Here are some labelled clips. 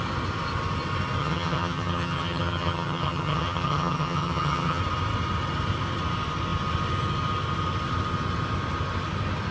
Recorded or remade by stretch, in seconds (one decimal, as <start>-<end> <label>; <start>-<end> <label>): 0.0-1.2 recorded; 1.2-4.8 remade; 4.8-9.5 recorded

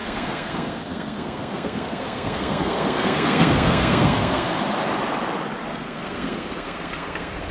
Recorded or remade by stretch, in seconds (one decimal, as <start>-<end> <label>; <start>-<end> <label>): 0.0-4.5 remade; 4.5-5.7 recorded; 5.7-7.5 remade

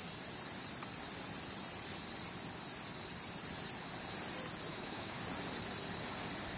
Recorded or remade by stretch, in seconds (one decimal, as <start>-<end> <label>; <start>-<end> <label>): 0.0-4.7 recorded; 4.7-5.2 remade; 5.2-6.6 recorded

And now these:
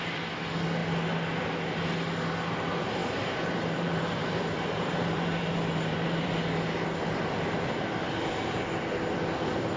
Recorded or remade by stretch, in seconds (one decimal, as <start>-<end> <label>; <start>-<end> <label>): 0.0-3.0 recorded; 3.0-6.3 remade; 6.3-9.8 recorded

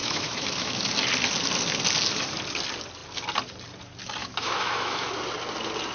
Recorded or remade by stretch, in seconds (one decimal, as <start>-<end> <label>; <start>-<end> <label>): 0.0-0.8 remade; 0.8-4.2 recorded; 4.2-5.1 remade; 5.1-5.9 recorded